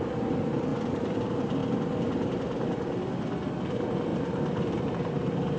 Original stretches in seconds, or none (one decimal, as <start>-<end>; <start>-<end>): 1.6-3.6